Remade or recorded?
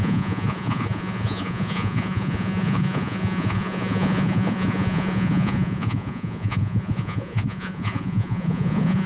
remade